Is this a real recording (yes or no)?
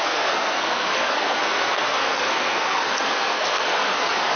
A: no